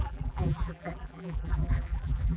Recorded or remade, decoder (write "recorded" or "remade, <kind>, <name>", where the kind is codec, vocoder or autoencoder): remade, vocoder, BigVGAN v2